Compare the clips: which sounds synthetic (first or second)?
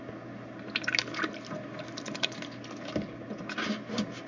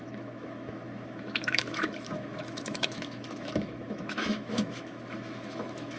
second